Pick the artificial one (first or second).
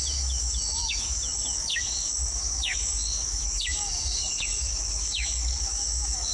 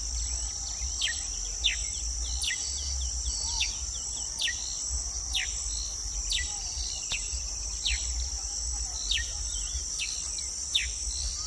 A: first